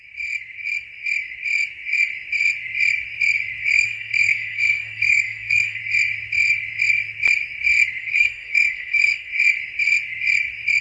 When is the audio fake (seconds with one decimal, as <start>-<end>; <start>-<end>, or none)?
3.6-5.8; 8.0-9.3